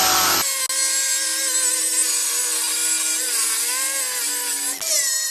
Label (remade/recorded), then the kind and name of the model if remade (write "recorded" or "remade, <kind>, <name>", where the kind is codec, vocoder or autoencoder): recorded